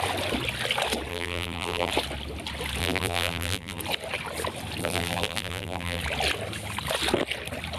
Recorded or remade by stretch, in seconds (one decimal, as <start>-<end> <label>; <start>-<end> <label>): 0.0-1.1 recorded; 1.1-1.9 remade; 1.9-2.8 recorded; 2.8-3.8 remade; 3.8-4.8 recorded; 4.8-6.0 remade; 6.0-7.8 recorded